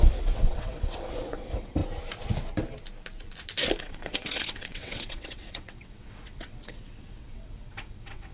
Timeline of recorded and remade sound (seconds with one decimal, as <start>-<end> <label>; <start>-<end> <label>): 0.0-1.8 remade; 1.8-3.8 recorded; 3.8-8.3 remade